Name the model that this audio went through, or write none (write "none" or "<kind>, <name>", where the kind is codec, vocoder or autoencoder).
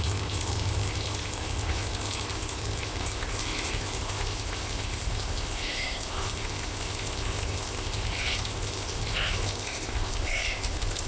codec, ZipCodec